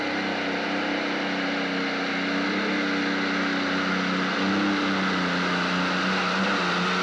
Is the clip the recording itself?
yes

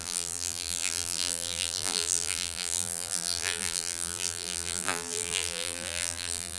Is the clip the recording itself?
no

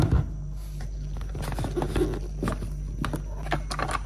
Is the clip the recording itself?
yes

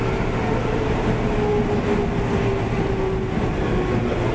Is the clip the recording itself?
yes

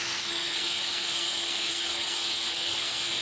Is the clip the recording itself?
no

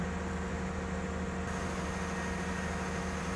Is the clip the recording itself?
yes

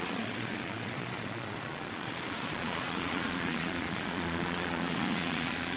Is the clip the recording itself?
no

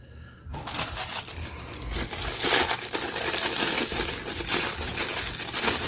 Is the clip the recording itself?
yes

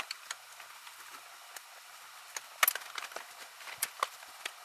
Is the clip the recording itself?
yes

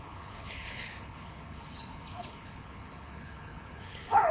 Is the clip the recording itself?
no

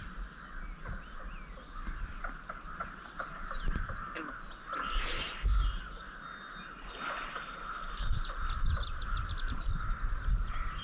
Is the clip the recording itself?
yes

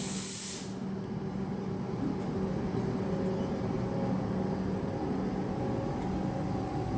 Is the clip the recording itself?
yes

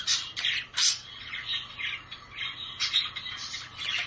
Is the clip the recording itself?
no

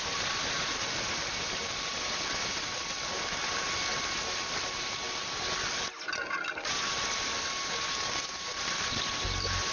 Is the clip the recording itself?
yes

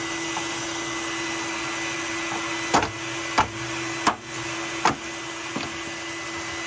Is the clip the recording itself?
yes